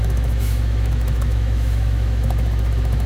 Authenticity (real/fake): fake